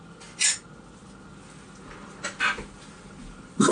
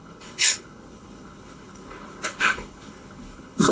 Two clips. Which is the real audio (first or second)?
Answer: first